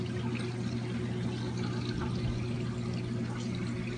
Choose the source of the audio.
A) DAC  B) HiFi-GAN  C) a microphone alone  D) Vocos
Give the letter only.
C